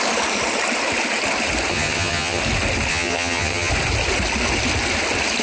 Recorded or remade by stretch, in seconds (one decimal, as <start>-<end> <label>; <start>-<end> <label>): 0.0-1.7 recorded; 1.7-2.4 remade; 2.4-2.9 recorded; 2.9-3.7 remade; 3.7-5.4 recorded